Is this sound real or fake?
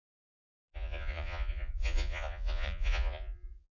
fake